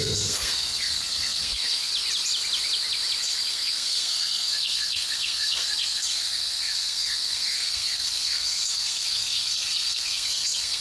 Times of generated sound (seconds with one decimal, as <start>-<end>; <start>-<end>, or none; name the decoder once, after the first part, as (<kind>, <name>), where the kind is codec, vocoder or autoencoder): 0.0-1.9 (codec, SNAC); 3.2-10.8